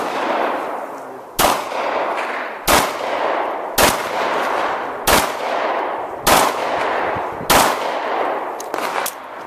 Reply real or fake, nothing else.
real